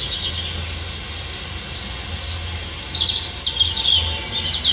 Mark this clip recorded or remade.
recorded